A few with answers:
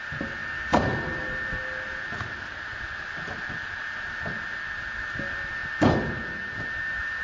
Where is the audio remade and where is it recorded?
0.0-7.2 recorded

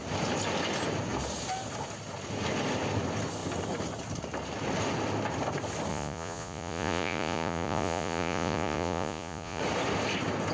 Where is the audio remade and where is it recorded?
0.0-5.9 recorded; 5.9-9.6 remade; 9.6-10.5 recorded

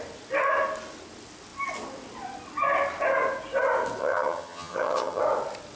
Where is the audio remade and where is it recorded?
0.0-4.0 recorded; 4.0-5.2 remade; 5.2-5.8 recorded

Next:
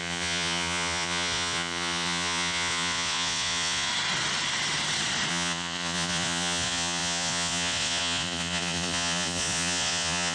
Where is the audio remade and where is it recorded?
0.0-3.9 remade; 3.9-5.3 recorded; 5.3-10.3 remade

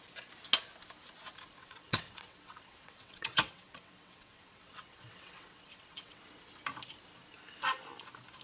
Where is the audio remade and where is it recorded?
0.0-1.6 recorded; 1.6-6.2 remade; 6.2-8.4 recorded